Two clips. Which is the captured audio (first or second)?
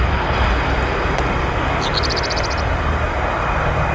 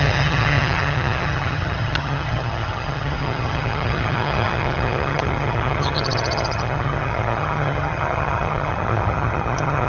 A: first